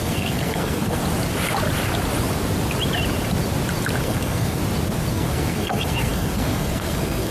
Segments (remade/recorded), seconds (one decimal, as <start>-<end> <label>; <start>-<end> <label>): 0.0-1.0 remade; 1.0-4.0 recorded; 4.0-4.6 remade; 4.6-5.1 recorded; 5.1-7.3 remade